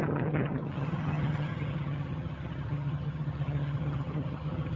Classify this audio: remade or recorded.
remade